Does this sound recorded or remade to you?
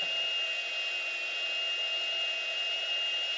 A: recorded